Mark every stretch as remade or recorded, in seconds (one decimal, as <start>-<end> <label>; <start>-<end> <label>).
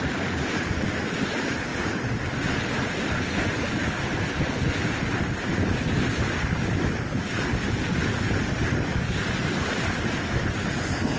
0.0-11.2 recorded